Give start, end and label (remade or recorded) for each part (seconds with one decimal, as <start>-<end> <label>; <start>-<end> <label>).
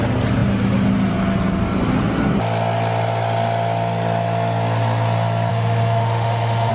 0.0-5.5 recorded; 5.5-6.7 remade